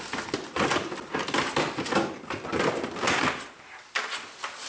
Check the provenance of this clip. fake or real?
real